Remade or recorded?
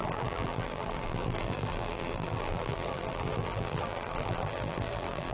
remade